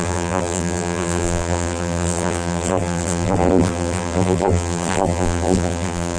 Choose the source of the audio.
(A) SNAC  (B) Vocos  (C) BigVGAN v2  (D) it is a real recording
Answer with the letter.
C